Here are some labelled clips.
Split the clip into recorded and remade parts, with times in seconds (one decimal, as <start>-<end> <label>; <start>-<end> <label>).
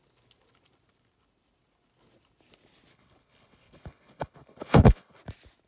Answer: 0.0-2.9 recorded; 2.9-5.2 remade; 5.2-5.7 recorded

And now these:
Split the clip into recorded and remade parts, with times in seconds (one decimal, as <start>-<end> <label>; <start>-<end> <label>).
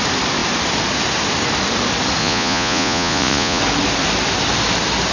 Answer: 0.0-2.2 recorded; 2.2-3.6 remade; 3.6-5.1 recorded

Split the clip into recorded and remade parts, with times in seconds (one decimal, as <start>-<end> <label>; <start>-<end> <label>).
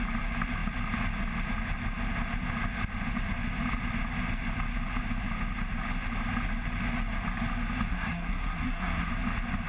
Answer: 0.0-7.9 recorded; 7.9-9.1 remade; 9.1-9.7 recorded